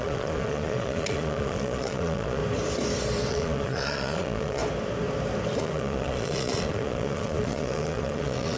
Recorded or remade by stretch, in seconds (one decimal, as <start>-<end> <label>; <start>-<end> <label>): 0.0-2.4 remade; 2.4-3.3 recorded; 3.3-4.6 remade; 4.6-5.6 recorded; 5.6-8.6 remade